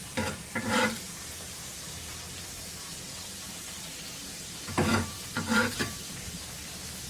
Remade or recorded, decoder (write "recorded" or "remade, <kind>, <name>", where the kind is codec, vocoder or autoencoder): remade, vocoder, BigVGAN v2